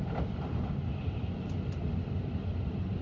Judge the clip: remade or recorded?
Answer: recorded